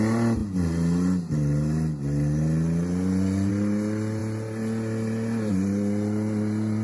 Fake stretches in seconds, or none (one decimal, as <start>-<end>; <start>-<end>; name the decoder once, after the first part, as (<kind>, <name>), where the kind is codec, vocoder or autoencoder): none